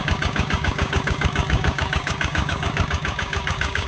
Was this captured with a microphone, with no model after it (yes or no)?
no